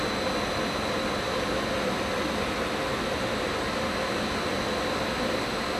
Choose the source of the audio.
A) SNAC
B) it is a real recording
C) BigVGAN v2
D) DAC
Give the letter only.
B